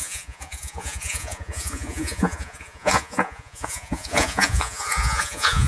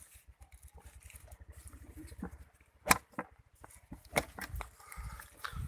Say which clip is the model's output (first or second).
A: first